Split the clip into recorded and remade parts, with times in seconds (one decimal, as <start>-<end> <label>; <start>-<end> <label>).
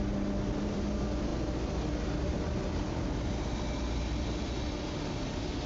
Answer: 0.0-5.7 recorded